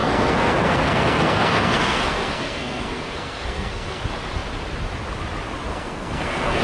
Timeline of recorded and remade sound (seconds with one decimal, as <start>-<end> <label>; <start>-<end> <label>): 0.0-4.0 remade; 4.0-5.7 recorded; 5.7-6.6 remade